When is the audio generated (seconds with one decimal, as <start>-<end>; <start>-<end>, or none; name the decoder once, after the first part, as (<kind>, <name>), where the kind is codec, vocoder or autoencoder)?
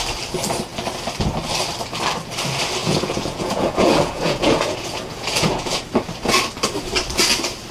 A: 2.8-5.8 (vocoder, Vocos)